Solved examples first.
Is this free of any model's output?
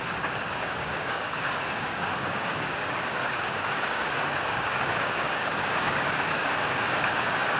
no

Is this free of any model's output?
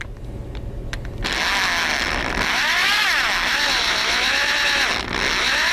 yes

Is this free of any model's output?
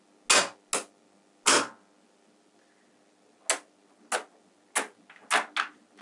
yes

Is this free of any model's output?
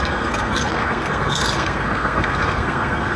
no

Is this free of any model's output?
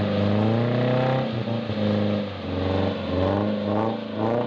yes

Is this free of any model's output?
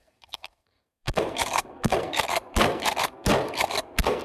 no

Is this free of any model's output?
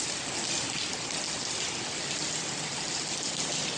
yes